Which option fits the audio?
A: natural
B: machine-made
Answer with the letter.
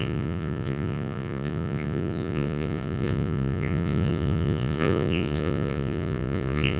B